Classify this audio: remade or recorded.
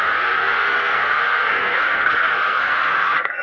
remade